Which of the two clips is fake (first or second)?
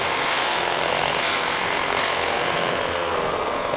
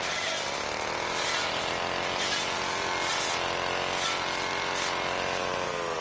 first